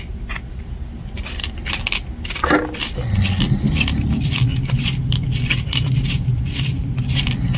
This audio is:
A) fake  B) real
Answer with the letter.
B